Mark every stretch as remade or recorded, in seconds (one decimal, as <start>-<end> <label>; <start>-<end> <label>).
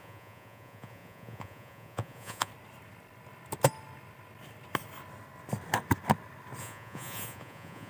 0.0-2.5 remade; 2.5-6.6 recorded; 6.6-7.9 remade